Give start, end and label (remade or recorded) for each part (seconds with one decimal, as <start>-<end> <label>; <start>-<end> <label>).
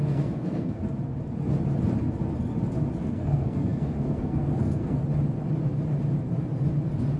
0.0-0.8 remade; 0.8-3.0 recorded; 3.0-5.0 remade; 5.0-7.2 recorded